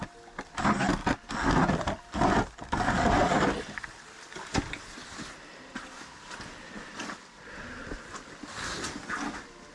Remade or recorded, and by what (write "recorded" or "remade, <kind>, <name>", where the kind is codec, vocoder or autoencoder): recorded